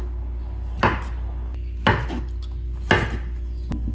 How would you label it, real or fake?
real